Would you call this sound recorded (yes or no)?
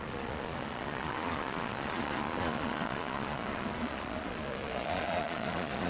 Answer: no